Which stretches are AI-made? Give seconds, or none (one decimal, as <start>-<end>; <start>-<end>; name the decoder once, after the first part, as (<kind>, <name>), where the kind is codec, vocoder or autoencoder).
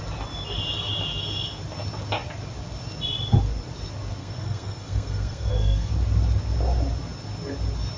4.2-5.9 (codec, SNAC)